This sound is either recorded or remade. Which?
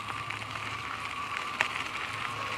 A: recorded